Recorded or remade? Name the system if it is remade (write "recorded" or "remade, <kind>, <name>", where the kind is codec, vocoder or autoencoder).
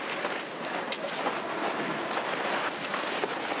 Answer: recorded